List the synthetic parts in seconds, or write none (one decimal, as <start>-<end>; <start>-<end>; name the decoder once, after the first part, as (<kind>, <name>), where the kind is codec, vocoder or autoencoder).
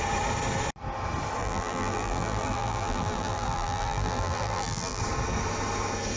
1.4-5.0 (vocoder, BigVGAN v2)